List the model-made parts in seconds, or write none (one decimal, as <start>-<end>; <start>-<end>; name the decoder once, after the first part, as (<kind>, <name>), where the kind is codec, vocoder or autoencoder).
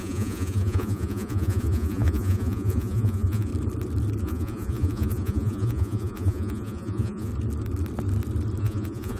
0.0-3.5 (vocoder, Vocos); 4.2-7.3; 8.6-9.2